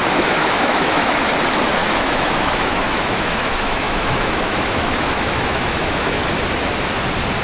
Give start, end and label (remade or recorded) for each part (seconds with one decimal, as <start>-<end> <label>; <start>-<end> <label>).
0.0-1.3 remade; 1.3-1.8 recorded; 1.8-6.2 remade; 6.2-7.4 recorded